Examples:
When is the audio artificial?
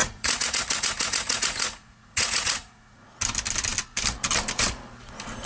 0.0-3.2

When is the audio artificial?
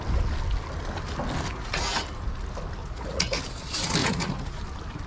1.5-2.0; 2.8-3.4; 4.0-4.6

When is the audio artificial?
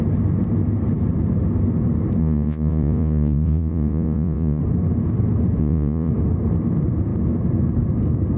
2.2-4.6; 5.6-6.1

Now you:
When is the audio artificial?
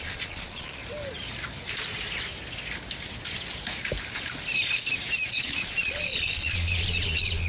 0.0-0.8; 5.3-7.5